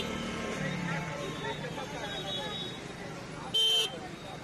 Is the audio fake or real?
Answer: real